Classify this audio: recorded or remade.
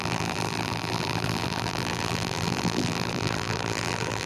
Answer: remade